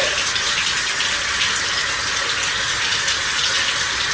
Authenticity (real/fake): real